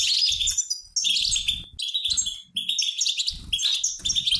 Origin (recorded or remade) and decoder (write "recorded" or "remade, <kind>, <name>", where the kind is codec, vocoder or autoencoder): recorded